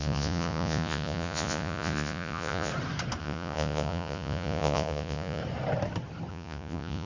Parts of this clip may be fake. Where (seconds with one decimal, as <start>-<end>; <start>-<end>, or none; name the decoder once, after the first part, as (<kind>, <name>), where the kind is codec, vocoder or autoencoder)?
0.0-2.7 (vocoder, Vocos); 3.2-5.4; 6.3-7.1